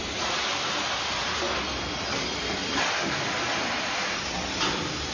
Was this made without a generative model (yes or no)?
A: no